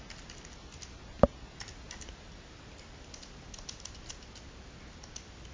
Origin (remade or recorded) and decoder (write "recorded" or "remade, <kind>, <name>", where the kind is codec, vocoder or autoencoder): recorded